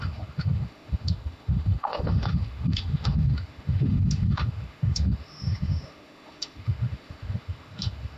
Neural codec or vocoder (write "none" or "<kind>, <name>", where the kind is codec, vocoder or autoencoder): autoencoder, DAC-VAE